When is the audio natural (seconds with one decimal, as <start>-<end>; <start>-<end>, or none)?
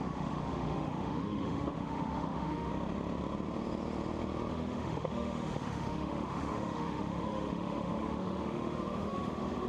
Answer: 2.7-4.5